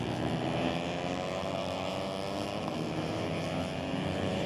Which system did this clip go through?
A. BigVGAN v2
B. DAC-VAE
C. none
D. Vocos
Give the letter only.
C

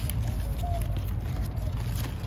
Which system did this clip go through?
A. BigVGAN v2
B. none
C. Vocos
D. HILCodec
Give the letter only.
B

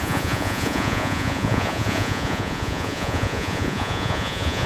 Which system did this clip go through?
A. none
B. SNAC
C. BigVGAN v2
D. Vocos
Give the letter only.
D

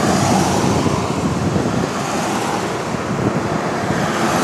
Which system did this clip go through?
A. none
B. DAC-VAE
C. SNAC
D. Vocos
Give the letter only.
A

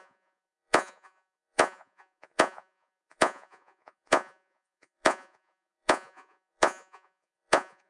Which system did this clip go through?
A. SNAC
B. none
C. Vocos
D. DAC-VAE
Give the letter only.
C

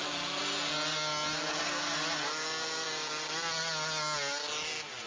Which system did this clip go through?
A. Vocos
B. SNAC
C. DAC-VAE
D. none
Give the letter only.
D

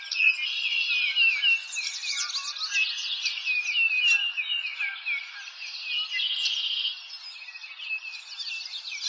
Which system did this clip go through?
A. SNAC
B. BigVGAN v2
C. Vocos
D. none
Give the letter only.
D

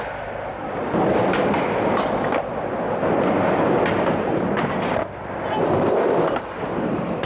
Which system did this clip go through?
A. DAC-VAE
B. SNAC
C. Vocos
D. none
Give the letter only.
D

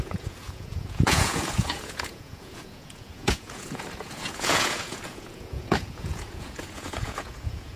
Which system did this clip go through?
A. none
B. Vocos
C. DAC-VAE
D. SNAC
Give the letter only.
B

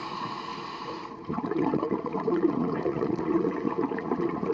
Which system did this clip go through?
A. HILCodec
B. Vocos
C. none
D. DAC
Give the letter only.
B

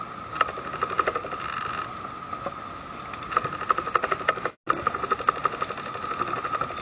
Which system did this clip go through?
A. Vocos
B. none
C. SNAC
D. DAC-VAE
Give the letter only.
B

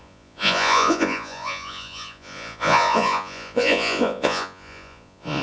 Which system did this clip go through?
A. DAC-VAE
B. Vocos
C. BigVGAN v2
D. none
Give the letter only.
B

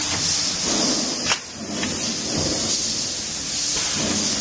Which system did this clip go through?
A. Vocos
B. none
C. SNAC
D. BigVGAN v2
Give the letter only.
B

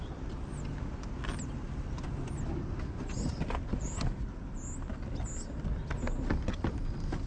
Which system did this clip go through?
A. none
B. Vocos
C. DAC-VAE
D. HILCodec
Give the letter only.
A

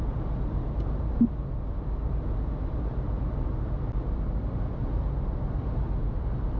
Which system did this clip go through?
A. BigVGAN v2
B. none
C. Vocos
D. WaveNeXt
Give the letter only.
B